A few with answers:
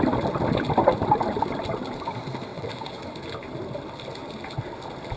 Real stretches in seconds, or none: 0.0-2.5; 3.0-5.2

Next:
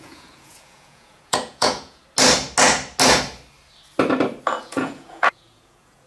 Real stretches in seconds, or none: 2.0-4.6

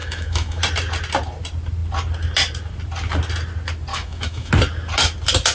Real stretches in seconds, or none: 0.6-3.9; 4.5-5.5

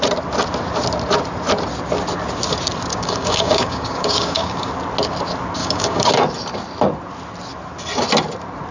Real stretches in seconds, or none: 0.0-2.9; 4.7-5.6; 6.1-8.7